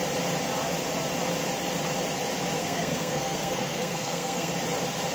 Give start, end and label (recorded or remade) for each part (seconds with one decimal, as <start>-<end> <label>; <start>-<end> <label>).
0.0-2.6 recorded; 2.6-4.5 remade; 4.5-5.1 recorded

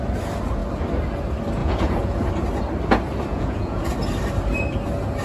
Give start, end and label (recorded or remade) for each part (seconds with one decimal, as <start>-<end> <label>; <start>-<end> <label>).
0.0-1.6 recorded; 1.6-2.3 remade; 2.3-3.3 recorded; 3.3-3.9 remade; 3.9-5.2 recorded

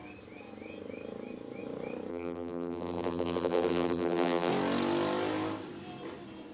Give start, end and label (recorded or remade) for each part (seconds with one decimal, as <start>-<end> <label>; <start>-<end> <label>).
0.0-2.1 recorded; 2.1-4.5 remade; 4.5-6.5 recorded